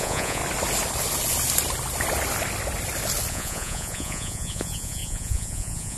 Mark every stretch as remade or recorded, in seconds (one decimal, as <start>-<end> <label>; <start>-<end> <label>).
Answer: 0.0-0.4 remade; 0.4-3.3 recorded; 3.3-6.0 remade